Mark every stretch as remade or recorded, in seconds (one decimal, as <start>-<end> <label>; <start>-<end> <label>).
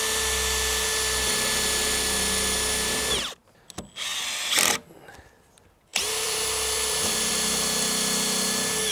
0.0-5.9 recorded; 5.9-7.3 remade; 7.3-8.9 recorded